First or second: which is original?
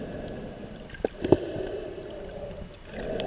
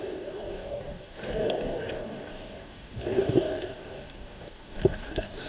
first